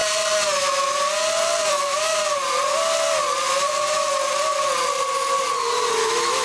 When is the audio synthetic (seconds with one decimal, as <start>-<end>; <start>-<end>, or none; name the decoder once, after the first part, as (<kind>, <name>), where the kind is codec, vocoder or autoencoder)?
1.7-2.2 (autoencoder, DAC-VAE); 6.0-6.4